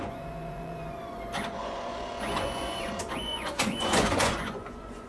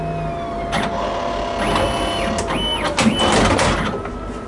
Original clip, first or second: second